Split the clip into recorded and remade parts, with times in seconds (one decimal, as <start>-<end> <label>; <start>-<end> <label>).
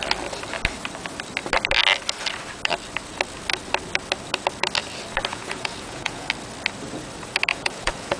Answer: 0.0-5.3 recorded; 5.3-6.3 remade; 6.3-7.5 recorded; 7.5-8.2 remade